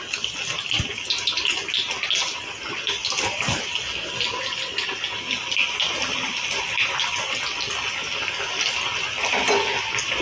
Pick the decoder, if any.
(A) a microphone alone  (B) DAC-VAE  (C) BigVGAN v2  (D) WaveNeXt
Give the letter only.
A